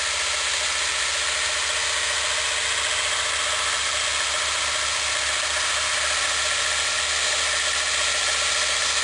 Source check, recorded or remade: recorded